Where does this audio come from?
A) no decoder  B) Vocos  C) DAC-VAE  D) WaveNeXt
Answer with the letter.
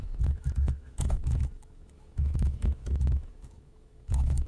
C